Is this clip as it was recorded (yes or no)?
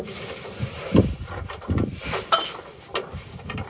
yes